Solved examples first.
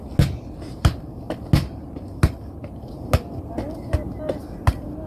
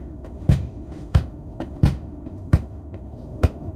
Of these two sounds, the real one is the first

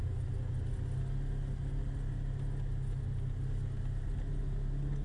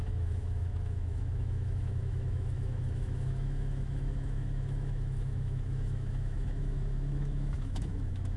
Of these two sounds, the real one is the first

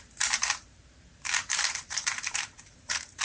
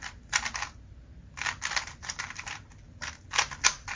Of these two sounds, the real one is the second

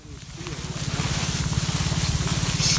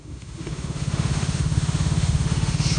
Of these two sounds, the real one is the first